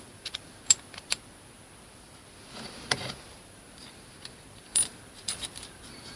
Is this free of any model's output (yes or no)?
no